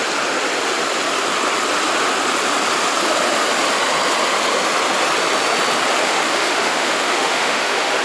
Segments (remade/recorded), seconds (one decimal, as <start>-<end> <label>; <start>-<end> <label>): 0.0-6.0 recorded; 6.0-8.0 remade